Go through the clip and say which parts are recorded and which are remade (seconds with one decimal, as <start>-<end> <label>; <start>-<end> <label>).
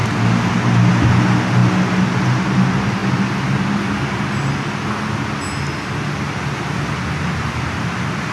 0.0-8.3 recorded